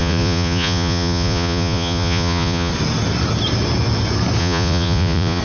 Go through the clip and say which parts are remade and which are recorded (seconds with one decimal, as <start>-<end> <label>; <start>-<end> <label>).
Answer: 0.0-2.7 remade; 2.7-4.4 recorded; 4.4-5.4 remade